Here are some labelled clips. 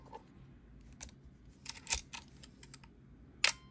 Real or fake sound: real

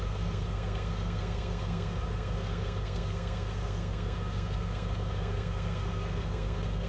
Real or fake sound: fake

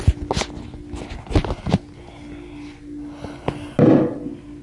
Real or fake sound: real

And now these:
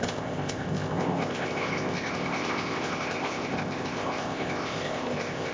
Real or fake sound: fake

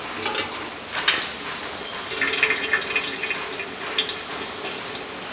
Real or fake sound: real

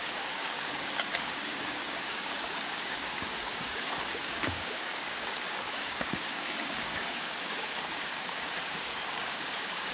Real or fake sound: fake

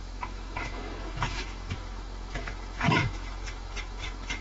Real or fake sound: fake